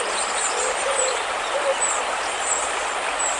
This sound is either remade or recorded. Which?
recorded